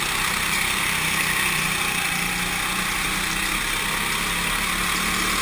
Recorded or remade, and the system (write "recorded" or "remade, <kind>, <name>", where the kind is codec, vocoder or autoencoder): recorded